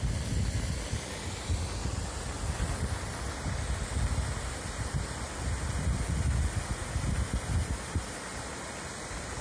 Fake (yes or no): no